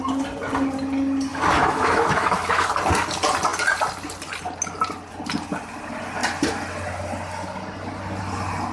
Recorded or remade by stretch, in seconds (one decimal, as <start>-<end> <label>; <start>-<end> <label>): 0.0-1.3 recorded; 1.3-2.7 remade; 2.7-8.7 recorded